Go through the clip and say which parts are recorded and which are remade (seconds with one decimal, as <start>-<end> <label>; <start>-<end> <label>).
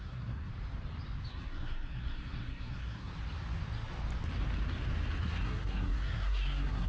0.0-0.5 remade; 0.5-1.3 recorded; 1.3-3.1 remade; 3.1-5.2 recorded; 5.2-6.9 remade